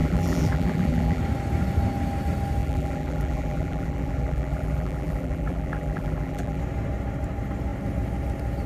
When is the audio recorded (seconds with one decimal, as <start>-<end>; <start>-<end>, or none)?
1.2-2.6; 6.6-8.7